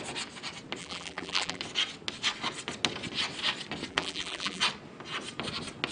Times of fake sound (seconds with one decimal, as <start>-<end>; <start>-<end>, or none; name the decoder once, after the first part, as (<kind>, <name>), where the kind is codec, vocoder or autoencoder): 0.8-1.6 (vocoder, BigVGAN v2); 3.9-4.6